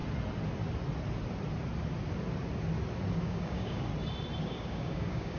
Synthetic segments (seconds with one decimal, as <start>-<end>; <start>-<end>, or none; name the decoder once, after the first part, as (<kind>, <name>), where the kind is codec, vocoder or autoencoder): 3.2-3.9 (codec, DAC); 4.4-5.4